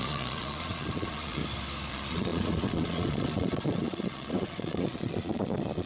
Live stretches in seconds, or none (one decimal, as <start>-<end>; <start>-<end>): 1.4-1.9